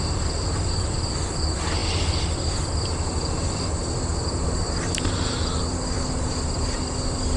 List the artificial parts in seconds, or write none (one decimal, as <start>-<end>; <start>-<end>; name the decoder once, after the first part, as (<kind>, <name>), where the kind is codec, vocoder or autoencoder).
none